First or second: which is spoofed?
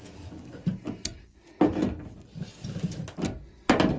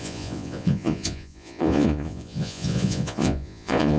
second